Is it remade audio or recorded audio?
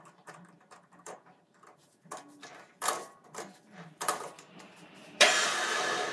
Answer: remade